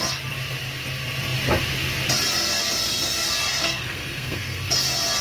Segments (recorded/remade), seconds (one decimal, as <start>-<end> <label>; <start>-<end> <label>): 0.0-3.6 recorded; 3.6-4.7 remade; 4.7-5.2 recorded